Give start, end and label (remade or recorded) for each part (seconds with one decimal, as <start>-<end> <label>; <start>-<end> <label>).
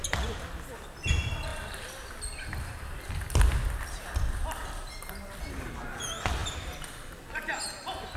0.0-8.2 recorded